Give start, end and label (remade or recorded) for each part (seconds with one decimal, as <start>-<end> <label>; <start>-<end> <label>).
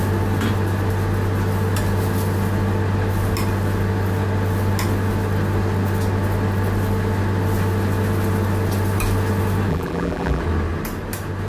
0.0-9.7 recorded; 9.7-10.4 remade; 10.4-11.5 recorded